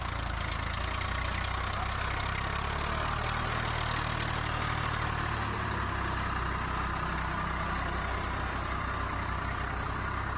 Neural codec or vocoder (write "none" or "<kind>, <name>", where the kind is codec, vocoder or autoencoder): none